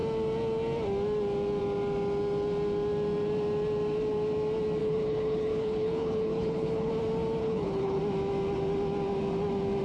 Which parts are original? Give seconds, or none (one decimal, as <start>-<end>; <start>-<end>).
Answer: 0.0-4.8; 6.9-7.4; 8.0-9.8